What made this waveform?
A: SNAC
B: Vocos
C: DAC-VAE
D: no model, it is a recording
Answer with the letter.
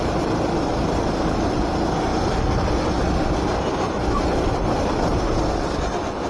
D